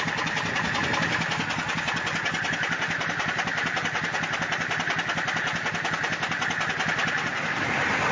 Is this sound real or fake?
real